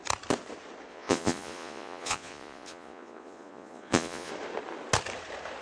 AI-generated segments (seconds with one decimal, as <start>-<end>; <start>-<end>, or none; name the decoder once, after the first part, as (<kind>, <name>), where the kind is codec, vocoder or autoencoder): 0.9-4.3 (vocoder, Vocos)